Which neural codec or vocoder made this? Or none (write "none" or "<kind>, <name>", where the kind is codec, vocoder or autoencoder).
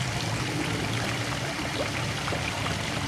none